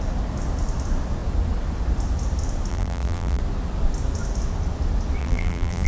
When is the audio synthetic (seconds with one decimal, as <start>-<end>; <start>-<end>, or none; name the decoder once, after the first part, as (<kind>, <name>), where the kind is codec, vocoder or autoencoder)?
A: 2.7-3.4 (vocoder, BigVGAN v2); 5.2-5.9